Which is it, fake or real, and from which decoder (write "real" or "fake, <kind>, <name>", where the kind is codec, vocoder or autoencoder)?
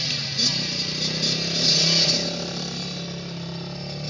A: real